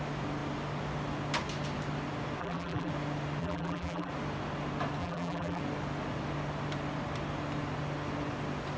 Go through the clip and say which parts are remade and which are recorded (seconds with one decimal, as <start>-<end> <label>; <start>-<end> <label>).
0.0-2.4 recorded; 2.4-2.9 remade; 2.9-3.4 recorded; 3.4-4.1 remade; 4.1-5.0 recorded; 5.0-5.6 remade; 5.6-8.8 recorded